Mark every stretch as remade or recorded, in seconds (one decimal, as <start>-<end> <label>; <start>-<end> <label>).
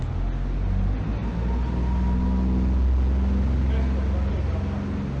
0.0-5.2 recorded